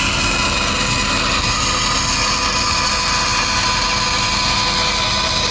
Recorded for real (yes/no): yes